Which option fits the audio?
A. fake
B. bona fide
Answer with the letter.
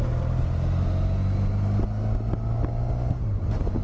B